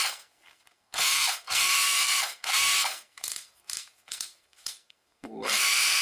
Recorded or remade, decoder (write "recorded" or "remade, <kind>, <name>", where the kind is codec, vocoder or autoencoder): remade, codec, SNAC